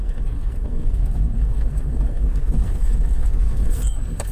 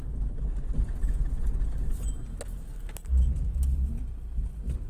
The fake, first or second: first